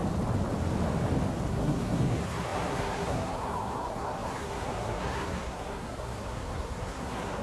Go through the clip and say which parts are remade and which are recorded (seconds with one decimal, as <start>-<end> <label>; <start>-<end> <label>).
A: 0.0-1.5 recorded; 1.5-7.4 remade